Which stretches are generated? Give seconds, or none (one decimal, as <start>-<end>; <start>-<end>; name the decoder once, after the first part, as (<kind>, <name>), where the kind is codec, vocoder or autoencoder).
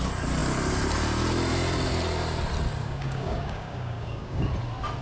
2.8-4.5 (codec, DAC)